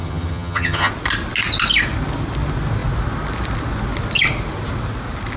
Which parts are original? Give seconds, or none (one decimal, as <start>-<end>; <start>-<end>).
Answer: 0.9-5.4